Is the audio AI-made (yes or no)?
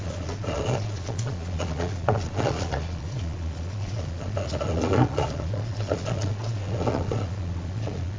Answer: yes